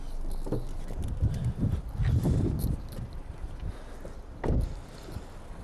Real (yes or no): yes